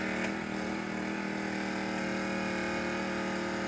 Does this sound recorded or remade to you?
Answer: recorded